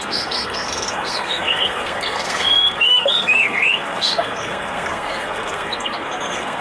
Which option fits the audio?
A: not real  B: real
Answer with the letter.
A